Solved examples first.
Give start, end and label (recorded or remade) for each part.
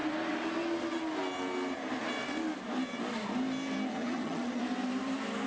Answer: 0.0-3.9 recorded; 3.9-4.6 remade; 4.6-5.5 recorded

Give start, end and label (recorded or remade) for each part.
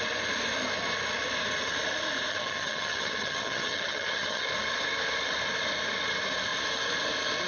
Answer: 0.0-2.3 recorded; 2.3-4.5 remade; 4.5-7.5 recorded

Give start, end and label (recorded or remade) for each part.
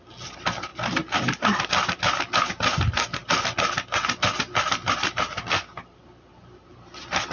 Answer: 0.0-7.3 recorded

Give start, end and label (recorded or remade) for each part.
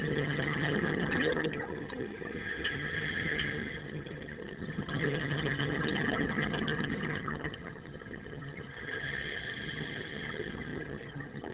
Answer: 0.0-11.5 remade